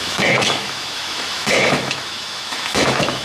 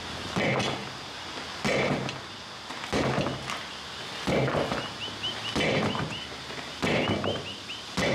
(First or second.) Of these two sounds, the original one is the second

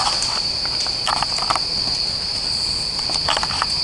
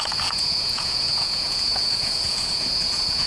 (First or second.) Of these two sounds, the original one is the first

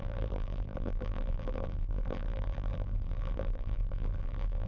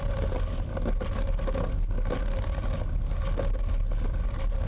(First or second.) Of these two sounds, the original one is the second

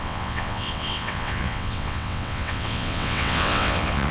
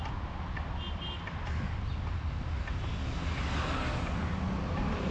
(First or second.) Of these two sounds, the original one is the second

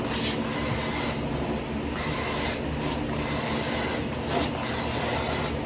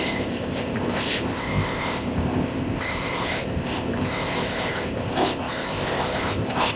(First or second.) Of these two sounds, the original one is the first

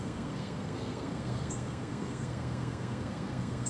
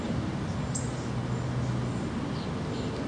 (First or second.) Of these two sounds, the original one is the second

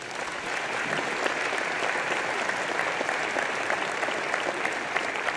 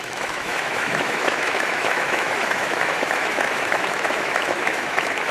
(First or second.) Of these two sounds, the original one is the first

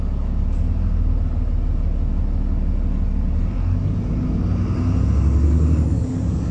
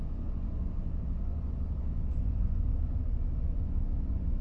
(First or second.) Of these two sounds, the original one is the first